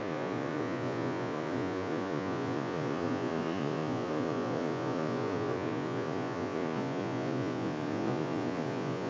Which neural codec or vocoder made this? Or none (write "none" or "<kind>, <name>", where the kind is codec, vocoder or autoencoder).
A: vocoder, Vocos